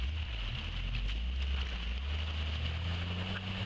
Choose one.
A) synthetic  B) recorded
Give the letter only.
B